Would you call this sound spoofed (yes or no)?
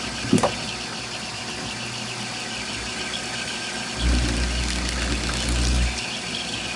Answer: no